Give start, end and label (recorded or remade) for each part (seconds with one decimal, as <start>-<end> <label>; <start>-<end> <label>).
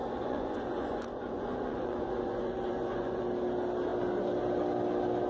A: 0.0-3.2 remade; 3.2-5.3 recorded